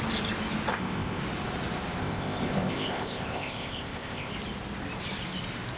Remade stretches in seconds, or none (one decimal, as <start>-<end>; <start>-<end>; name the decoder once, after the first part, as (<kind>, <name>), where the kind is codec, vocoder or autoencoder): 0.7-1.2 (codec, ZipCodec); 2.0-4.3